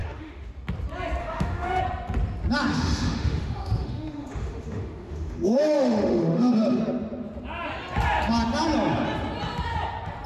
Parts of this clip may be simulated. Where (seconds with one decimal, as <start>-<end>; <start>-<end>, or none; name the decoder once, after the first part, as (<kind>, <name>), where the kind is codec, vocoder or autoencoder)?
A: 0.0-0.5 (autoencoder, DAC-VAE); 1.2-1.8; 2.7-6.8